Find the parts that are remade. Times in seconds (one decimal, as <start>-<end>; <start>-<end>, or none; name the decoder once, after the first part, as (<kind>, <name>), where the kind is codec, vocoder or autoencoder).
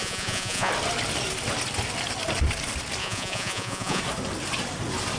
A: 0.0-0.7 (vocoder, Vocos); 3.0-4.0